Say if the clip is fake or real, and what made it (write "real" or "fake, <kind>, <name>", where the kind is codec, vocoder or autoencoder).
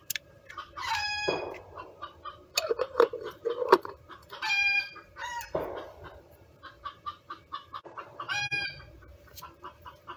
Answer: fake, vocoder, BigVGAN v2